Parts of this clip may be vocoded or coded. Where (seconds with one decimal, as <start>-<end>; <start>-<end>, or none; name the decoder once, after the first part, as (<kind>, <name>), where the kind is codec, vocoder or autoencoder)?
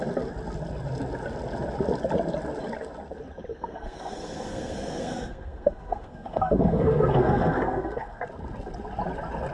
3.5-8.2 (codec, SNAC)